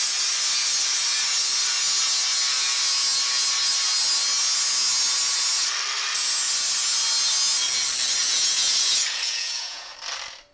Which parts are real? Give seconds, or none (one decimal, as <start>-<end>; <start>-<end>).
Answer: 0.0-8.2; 9.9-10.5